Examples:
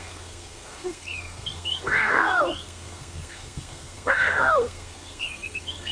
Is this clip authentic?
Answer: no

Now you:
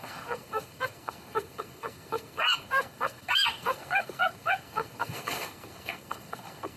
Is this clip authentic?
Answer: no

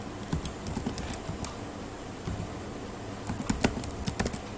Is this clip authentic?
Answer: yes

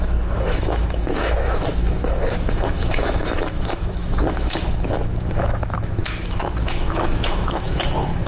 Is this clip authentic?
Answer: no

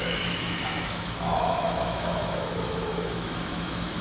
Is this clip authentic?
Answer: no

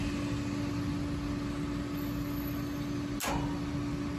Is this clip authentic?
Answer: yes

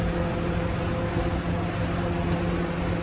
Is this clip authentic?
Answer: yes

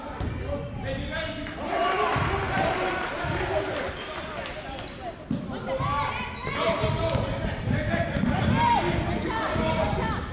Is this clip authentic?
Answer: yes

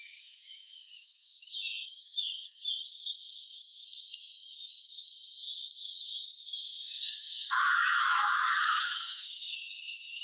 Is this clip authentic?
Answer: no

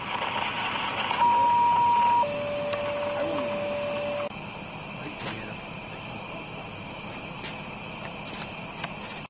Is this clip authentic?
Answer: yes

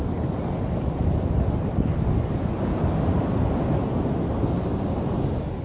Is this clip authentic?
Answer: yes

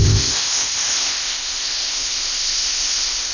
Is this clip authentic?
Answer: no